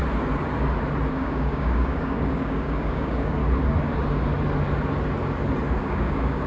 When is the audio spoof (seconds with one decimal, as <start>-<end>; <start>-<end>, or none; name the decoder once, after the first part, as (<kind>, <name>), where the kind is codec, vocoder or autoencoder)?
1.1-3.4 (codec, DAC); 5.8-6.5